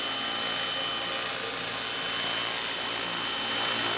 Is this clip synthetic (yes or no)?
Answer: no